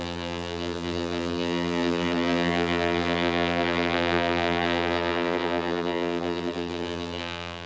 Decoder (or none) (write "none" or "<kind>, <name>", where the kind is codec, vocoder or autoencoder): vocoder, BigVGAN v2